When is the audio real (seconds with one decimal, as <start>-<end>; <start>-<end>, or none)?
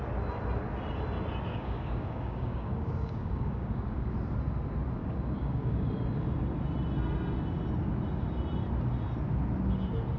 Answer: 0.0-1.5; 4.1-5.0; 5.9-10.2